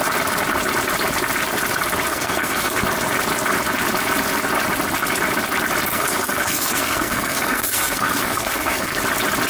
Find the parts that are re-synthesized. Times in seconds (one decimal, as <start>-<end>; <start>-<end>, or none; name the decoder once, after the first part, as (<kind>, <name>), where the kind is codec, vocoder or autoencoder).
2.1-2.8 (codec, SNAC); 5.9-9.0

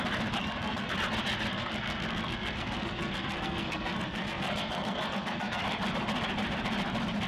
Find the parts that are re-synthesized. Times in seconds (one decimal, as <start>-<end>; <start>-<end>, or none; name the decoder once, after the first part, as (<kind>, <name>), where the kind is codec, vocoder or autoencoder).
0.4-0.9 (codec, SNAC); 1.5-5.6